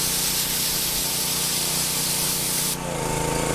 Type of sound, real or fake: real